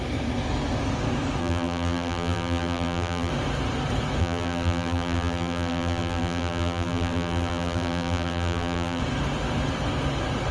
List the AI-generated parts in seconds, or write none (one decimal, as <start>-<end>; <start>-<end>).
1.4-3.3; 4.2-9.0